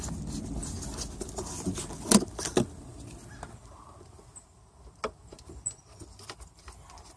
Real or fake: real